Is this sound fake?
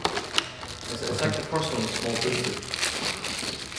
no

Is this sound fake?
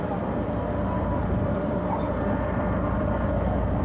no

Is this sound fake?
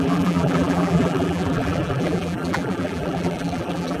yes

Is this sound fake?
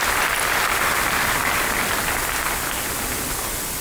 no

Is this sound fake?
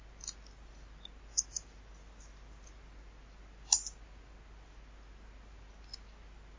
no